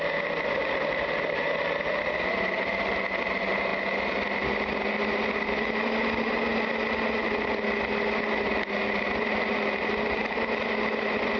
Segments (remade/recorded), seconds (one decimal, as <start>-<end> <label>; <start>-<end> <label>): 0.0-11.4 recorded